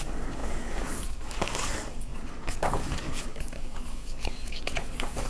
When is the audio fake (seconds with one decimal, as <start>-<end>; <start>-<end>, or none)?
0.0-5.3